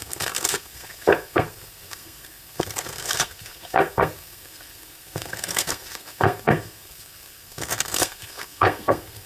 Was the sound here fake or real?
fake